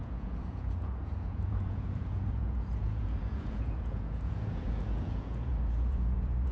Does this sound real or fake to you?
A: fake